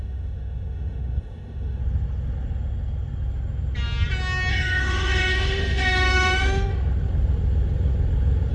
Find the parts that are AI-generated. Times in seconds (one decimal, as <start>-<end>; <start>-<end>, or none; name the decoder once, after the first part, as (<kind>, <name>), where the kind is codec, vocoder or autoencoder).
0.0-1.8 (autoencoder, DAC-VAE); 4.5-6.7